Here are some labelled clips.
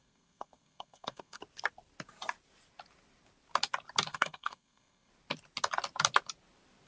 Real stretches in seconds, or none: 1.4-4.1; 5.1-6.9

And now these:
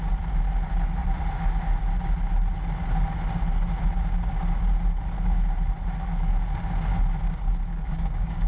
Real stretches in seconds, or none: 0.0-7.7

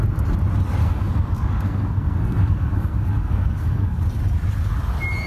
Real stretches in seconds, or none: 0.0-0.8; 4.0-5.3

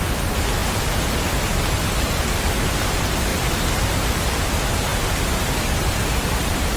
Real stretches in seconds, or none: 0.0-6.8

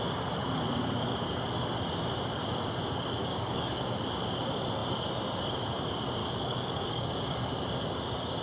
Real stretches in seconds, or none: 0.0-3.2; 3.8-6.2; 7.1-8.4

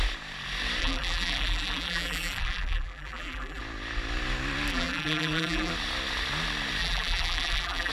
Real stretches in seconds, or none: 0.0-0.8; 3.6-4.7; 5.7-6.8